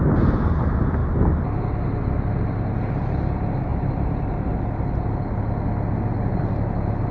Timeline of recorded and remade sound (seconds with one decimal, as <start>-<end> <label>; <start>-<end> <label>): 0.0-7.1 recorded